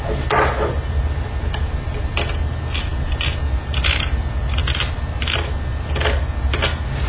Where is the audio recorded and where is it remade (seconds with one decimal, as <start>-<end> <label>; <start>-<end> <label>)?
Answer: 0.0-2.9 recorded; 2.9-3.6 remade; 3.6-4.6 recorded; 4.6-5.8 remade; 5.8-7.1 recorded